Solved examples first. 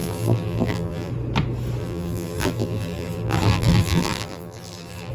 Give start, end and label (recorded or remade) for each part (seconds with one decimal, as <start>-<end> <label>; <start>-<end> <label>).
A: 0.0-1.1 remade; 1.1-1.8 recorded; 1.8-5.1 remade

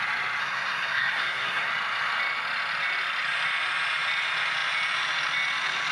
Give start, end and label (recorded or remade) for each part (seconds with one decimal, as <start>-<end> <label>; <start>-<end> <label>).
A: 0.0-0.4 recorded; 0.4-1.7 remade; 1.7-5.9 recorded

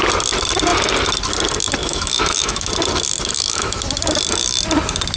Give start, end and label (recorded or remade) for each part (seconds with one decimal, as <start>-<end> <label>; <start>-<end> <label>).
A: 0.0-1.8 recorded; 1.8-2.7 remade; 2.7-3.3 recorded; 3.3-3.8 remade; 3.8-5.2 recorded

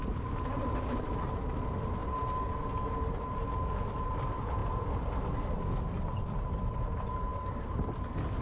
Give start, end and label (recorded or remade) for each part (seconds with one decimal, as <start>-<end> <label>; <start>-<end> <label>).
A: 0.0-8.4 recorded

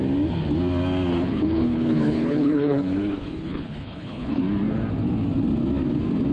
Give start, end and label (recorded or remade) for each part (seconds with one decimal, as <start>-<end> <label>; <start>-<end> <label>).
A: 0.0-1.1 recorded; 1.1-4.4 remade; 4.4-6.3 recorded

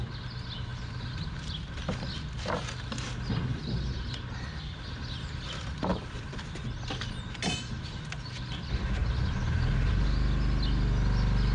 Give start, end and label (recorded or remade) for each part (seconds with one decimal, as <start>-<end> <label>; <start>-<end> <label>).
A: 0.0-0.7 recorded; 0.7-1.7 remade; 1.7-5.9 recorded; 5.9-6.5 remade; 6.5-11.5 recorded

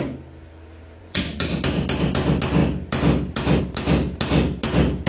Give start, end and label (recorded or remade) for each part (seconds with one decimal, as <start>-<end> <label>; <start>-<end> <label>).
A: 0.0-1.0 recorded; 1.0-1.5 remade; 1.5-5.1 recorded

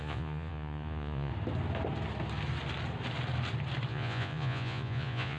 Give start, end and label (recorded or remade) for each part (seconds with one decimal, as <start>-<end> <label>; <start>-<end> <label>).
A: 0.0-1.3 remade; 1.3-3.9 recorded; 3.9-5.4 remade